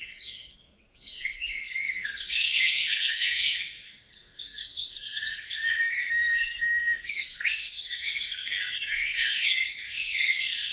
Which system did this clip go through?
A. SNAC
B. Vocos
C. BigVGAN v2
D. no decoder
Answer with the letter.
A